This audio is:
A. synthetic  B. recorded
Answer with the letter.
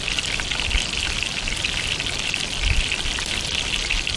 B